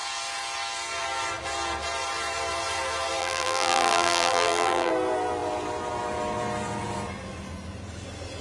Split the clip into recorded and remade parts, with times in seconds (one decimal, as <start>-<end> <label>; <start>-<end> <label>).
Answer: 0.0-3.2 recorded; 3.2-4.9 remade; 4.9-8.4 recorded